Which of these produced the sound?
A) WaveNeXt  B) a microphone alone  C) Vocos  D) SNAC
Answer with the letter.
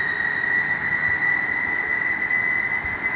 B